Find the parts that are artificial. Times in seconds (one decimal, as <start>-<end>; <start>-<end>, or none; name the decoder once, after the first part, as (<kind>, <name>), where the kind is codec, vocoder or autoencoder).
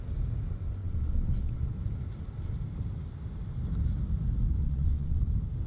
0.8-1.6 (vocoder, WaveNeXt); 4.6-5.2